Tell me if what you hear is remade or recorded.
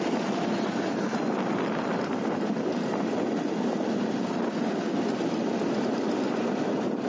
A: recorded